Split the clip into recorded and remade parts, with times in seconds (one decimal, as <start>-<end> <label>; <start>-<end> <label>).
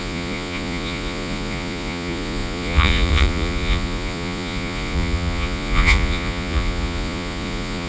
0.0-7.9 remade